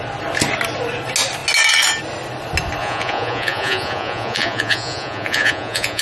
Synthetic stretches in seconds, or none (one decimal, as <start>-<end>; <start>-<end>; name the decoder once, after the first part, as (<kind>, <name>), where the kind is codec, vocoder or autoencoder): 2.8-6.0 (vocoder, Vocos)